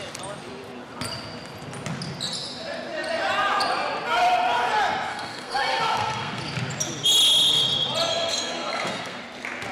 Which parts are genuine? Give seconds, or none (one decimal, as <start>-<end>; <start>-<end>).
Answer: 0.0-5.1; 6.4-8.1; 9.2-9.7